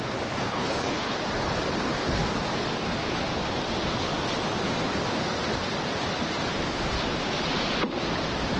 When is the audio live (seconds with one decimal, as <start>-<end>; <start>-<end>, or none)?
0.0-0.5; 1.2-8.6